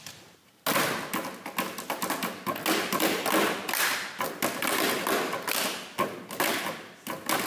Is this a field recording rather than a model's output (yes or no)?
yes